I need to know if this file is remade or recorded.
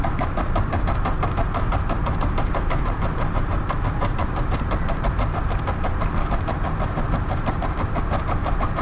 remade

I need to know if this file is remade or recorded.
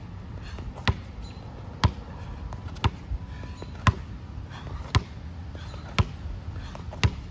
recorded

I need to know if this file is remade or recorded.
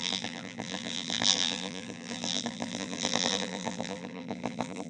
remade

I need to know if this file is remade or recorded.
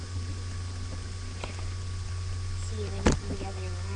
recorded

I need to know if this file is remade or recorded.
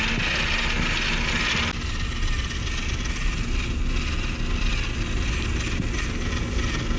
recorded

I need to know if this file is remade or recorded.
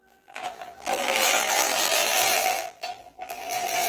remade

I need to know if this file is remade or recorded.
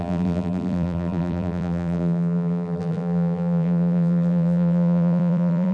remade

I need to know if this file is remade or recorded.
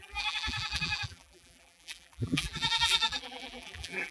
remade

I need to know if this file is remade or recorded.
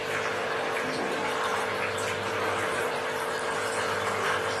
recorded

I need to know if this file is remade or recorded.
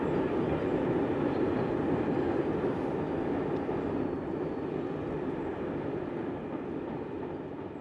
recorded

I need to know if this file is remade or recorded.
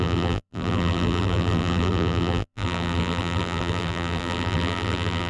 remade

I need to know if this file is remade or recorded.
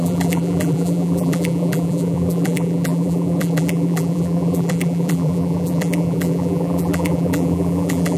remade